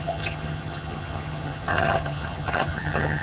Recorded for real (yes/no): no